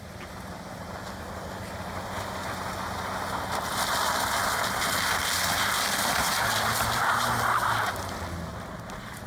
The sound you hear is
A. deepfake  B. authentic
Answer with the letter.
B